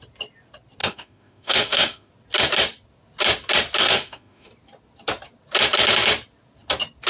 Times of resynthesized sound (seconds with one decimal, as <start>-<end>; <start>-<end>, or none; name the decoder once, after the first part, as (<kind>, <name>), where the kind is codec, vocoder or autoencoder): 0.8-2.1 (autoencoder, DAC-VAE); 3.8-4.5